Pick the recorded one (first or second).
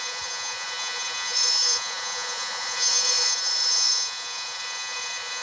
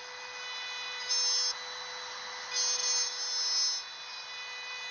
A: second